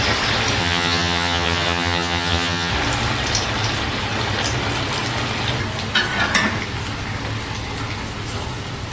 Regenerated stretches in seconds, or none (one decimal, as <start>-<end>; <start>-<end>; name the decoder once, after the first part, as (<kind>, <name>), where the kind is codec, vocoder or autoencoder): 0.6-2.7 (vocoder, HiFi-GAN)